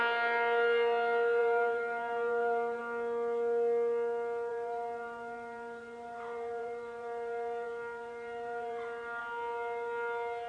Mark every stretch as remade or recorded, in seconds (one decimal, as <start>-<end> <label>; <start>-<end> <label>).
0.0-1.4 recorded; 1.4-2.8 remade; 2.8-4.5 recorded; 4.5-9.2 remade; 9.2-10.5 recorded